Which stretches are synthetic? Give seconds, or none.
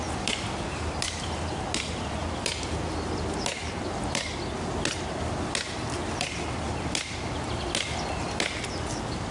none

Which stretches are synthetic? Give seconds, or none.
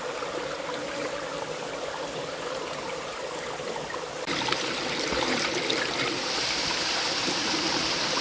none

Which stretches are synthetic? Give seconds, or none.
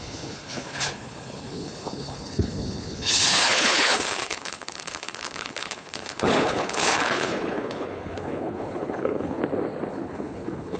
0.0-9.4 (codec, HILCodec); 9.9-10.8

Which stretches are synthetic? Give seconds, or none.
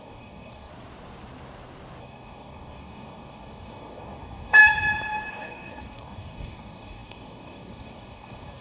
0.0-0.7 (codec, DAC); 2.0-4.6; 5.3-8.6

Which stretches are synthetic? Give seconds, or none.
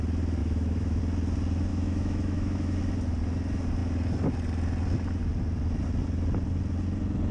0.4-1.0 (autoencoder, DAC-VAE); 1.7-2.8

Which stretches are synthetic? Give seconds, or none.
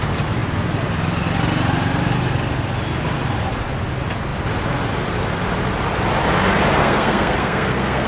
6.8-8.1 (codec, SNAC)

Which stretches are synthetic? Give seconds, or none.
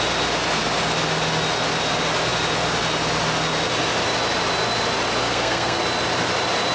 5.2-5.8 (codec, SNAC)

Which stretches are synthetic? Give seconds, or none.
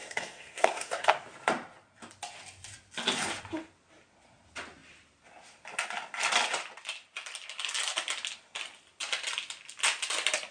0.0-1.1 (codec, SNAC)